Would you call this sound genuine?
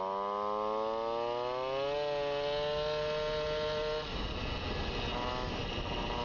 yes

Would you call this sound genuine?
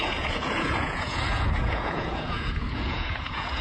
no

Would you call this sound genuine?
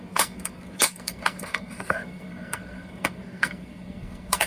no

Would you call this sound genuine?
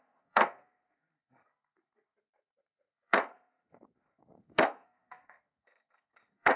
no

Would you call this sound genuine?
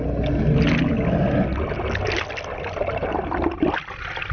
yes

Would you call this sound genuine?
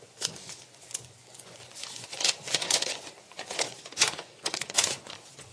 no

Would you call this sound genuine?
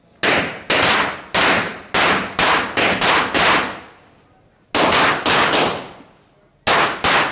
yes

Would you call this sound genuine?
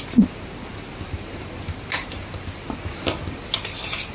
yes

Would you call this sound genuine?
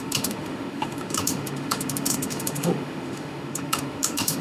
no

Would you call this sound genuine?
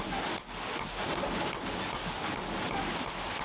yes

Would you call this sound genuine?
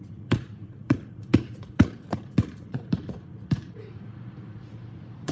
no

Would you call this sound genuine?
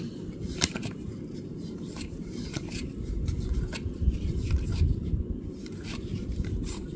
no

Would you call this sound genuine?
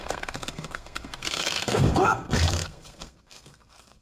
no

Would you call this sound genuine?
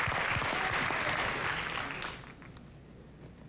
yes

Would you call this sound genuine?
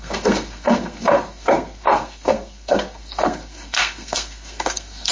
no